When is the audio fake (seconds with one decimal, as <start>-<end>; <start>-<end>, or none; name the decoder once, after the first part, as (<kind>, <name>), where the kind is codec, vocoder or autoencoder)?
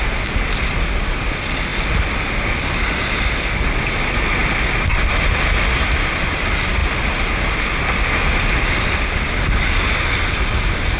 none